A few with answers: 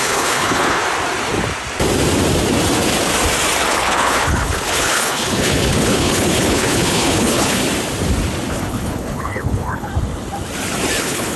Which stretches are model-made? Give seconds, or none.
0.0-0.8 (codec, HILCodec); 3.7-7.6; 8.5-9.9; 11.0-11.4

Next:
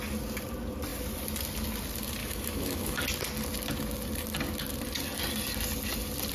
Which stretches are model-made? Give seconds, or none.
2.2-3.0 (autoencoder, DAC-VAE)

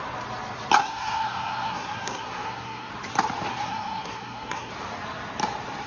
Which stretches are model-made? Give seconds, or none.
0.8-2.9 (codec, SNAC); 3.5-4.7